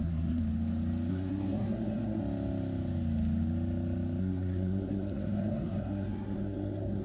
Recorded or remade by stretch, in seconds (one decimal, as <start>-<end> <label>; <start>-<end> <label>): 0.0-0.4 remade; 0.4-1.1 recorded; 1.1-2.2 remade; 2.2-4.2 recorded; 4.2-7.0 remade